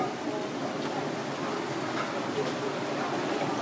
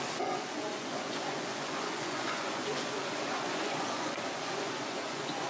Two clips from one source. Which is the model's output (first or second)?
second